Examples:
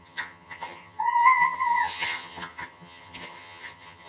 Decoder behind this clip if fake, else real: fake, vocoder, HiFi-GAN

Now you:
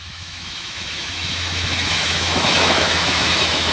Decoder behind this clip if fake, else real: fake, autoencoder, DAC-VAE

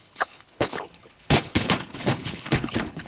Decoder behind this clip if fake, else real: fake, codec, HILCodec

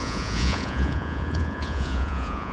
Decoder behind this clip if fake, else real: fake, vocoder, Vocos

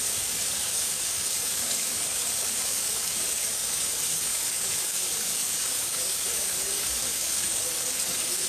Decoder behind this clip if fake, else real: fake, codec, DAC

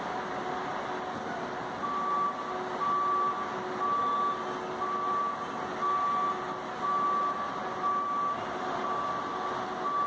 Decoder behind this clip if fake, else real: real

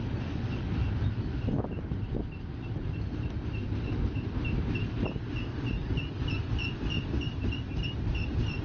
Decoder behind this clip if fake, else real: real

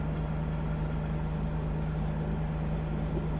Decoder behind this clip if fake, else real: real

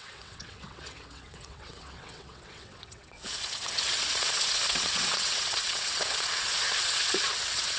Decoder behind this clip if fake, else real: fake, vocoder, WaveNeXt